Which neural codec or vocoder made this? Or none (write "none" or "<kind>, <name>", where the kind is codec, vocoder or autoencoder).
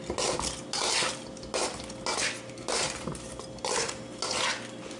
none